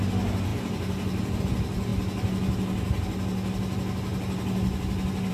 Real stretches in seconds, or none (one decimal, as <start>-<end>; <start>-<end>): 0.0-5.3